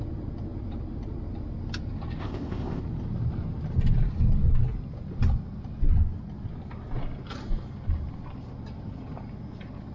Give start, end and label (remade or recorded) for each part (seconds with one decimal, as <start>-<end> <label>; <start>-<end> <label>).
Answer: 0.0-2.2 recorded; 2.2-2.8 remade; 2.8-9.9 recorded